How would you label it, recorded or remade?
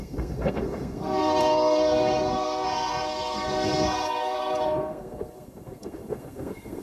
remade